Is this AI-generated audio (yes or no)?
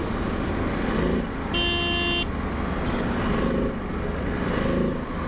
no